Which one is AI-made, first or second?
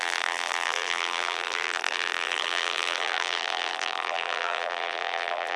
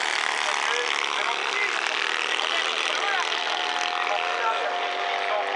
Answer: first